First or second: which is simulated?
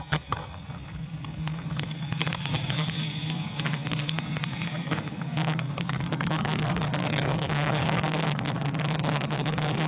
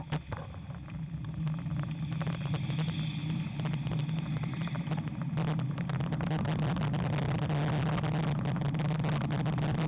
first